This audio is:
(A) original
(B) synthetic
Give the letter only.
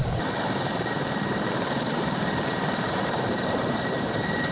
B